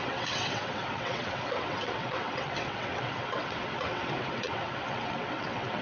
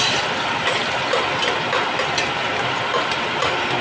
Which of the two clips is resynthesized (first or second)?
first